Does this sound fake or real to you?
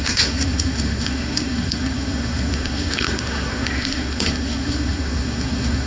fake